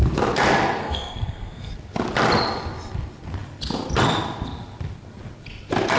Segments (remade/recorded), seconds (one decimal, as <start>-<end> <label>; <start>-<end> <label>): 0.0-0.8 recorded; 0.8-1.7 remade; 1.7-6.0 recorded